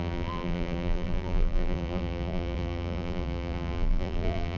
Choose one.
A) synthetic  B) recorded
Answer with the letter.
A